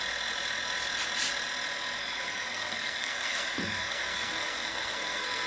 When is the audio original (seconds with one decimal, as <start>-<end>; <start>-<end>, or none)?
0.0-2.0